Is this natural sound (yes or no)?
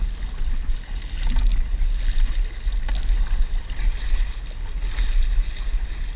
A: yes